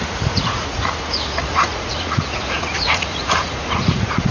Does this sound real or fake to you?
fake